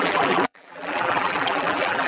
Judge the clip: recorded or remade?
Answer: remade